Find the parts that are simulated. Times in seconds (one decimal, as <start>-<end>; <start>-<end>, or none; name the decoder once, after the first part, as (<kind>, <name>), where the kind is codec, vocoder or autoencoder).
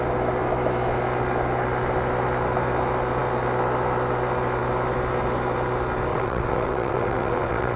6.1-7.8 (vocoder, WaveNeXt)